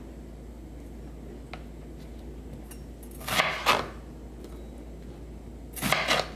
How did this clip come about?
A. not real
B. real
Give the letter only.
B